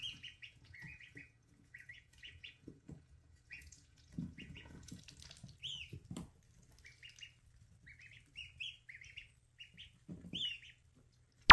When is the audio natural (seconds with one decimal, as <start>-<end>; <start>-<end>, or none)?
5.0-11.5